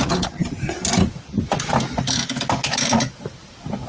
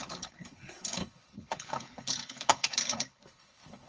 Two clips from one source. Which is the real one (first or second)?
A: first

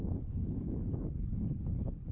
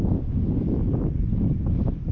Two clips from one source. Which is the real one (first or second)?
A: second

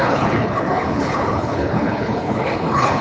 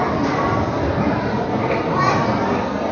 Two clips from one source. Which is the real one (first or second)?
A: second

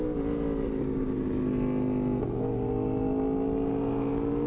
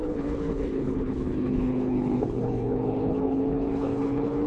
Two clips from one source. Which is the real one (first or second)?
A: first